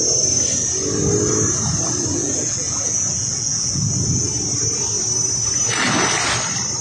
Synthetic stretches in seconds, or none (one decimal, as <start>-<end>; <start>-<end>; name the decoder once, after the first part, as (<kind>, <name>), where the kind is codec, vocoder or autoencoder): 2.1-4.3 (vocoder, Vocos)